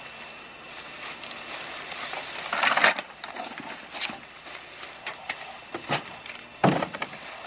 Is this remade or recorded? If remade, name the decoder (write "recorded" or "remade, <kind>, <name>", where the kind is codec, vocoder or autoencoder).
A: recorded